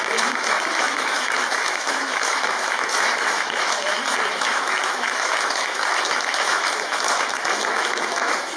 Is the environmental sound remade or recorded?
remade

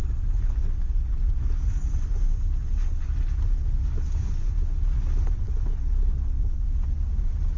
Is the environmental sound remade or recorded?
recorded